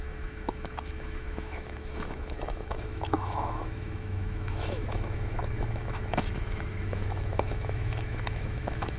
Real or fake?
fake